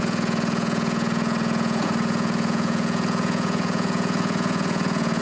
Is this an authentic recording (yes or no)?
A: no